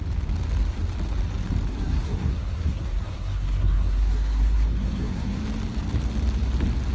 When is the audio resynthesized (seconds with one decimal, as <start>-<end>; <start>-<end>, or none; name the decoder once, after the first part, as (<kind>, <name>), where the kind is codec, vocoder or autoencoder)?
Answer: 1.7-5.4 (codec, SNAC)